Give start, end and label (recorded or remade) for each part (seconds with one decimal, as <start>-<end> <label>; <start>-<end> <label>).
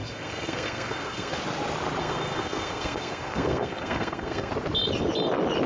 0.0-1.4 remade; 1.4-2.0 recorded; 2.0-4.5 remade; 4.5-5.7 recorded